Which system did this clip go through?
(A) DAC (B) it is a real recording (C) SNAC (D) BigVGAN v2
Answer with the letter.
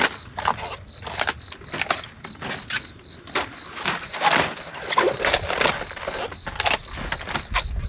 B